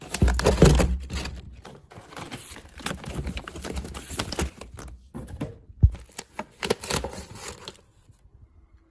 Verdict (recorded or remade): recorded